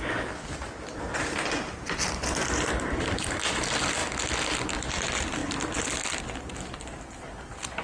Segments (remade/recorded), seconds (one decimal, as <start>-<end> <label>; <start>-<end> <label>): 0.0-7.8 recorded